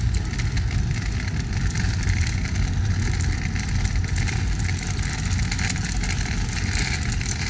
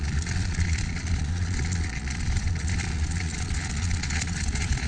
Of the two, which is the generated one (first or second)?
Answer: second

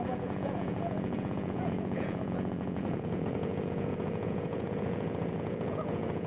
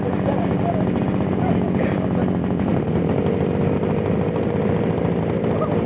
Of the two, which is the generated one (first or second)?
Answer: first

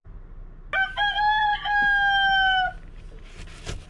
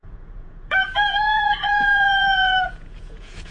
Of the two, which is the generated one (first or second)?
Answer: second